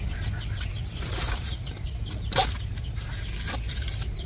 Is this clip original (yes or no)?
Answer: yes